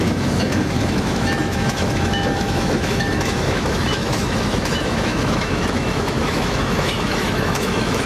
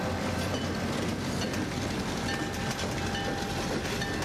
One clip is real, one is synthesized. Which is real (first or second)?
second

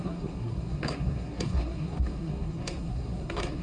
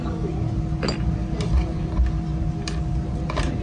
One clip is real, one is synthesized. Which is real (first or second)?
second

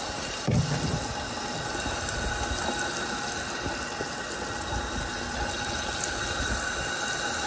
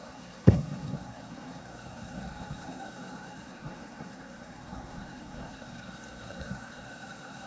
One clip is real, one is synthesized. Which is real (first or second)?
first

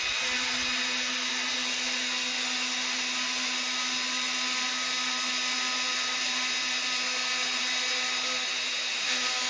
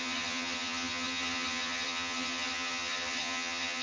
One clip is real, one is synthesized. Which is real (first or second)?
first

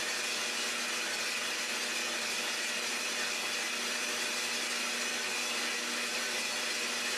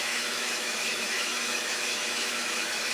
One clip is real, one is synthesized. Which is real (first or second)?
first